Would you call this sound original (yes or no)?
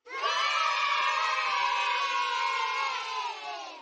yes